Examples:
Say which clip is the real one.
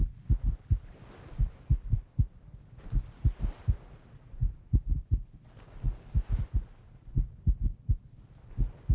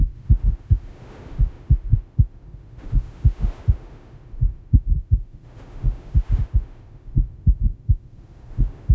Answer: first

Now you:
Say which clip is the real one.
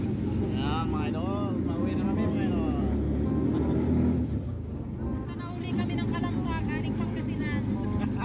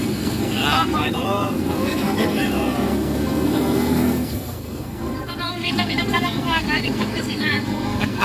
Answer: first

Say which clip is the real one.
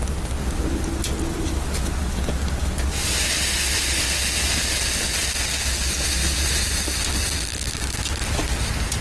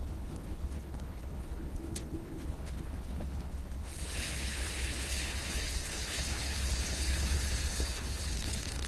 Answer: first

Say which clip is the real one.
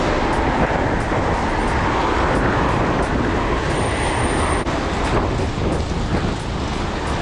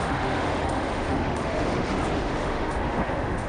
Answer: first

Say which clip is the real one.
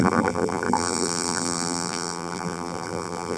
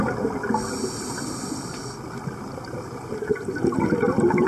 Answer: second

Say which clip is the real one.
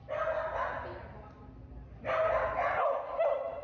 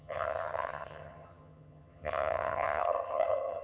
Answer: first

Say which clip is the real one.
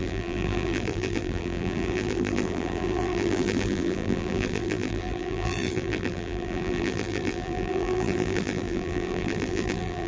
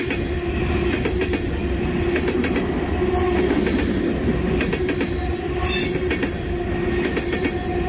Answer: second